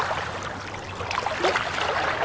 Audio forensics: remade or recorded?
recorded